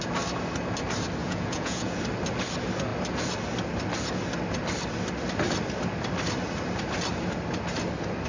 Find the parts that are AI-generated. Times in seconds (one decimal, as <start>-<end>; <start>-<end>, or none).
1.2-2.0